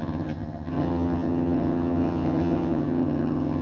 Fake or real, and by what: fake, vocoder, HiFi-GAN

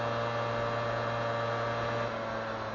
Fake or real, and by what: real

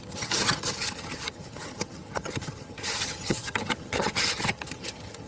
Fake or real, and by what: fake, vocoder, HiFi-GAN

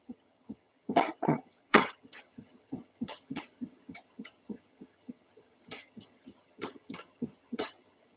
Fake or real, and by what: fake, vocoder, HiFi-GAN